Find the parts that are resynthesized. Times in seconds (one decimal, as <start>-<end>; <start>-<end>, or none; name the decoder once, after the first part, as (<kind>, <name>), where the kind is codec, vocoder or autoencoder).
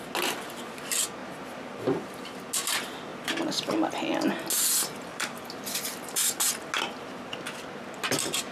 1.2-2.2 (vocoder, BigVGAN v2); 5.1-6.5